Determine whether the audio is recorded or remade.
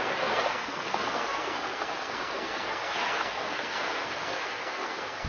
remade